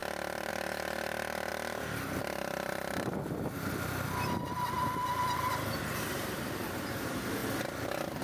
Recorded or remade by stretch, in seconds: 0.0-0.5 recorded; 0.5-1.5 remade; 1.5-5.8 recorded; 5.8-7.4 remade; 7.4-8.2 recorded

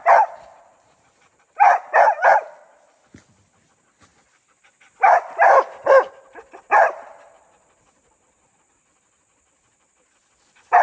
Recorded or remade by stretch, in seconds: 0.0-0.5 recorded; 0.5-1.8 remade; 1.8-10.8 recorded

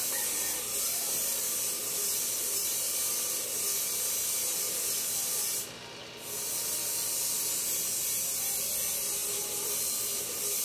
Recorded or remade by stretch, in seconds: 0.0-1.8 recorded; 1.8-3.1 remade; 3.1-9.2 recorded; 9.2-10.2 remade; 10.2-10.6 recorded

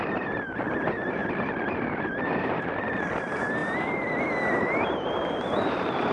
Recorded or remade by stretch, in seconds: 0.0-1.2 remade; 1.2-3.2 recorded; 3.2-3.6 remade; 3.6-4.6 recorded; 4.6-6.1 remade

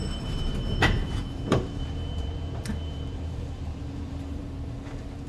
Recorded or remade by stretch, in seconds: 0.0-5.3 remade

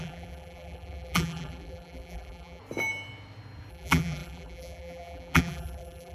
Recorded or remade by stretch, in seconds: 0.0-2.6 remade; 2.6-3.7 recorded; 3.7-6.1 remade

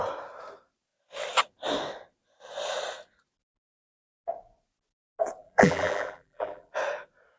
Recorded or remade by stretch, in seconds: 0.0-5.4 recorded; 5.4-6.7 remade; 6.7-7.4 recorded